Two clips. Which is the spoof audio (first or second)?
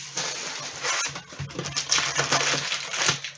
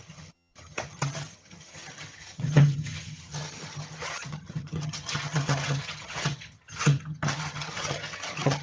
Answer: second